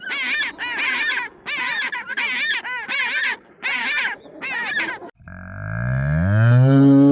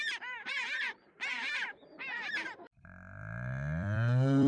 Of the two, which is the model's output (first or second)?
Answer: second